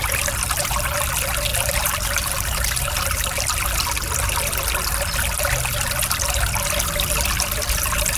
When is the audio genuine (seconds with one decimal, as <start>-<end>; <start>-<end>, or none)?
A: 0.0-1.5; 3.4-8.2